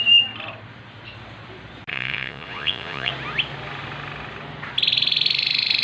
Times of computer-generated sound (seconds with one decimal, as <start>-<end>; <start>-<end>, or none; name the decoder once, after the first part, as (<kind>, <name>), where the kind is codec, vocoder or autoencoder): 1.9-3.1 (vocoder, Vocos)